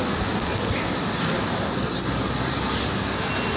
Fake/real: real